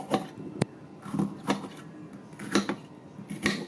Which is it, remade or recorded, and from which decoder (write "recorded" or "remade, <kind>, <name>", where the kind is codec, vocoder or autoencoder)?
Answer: recorded